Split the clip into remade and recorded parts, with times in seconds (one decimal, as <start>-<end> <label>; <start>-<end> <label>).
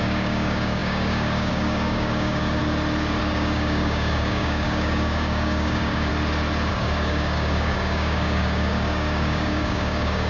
0.0-2.6 remade; 2.6-3.2 recorded; 3.2-6.1 remade; 6.1-6.7 recorded; 6.7-10.3 remade